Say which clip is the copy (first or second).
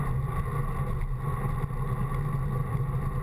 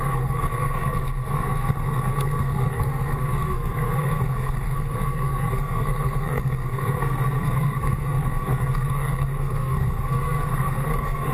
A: second